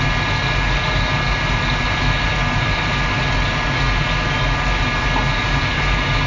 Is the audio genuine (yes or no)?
yes